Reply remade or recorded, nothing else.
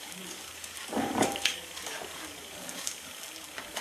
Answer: remade